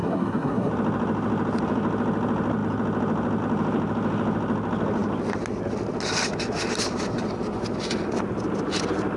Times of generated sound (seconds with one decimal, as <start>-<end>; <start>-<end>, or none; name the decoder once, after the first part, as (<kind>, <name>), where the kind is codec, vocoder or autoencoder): 0.0-0.7 (codec, SNAC)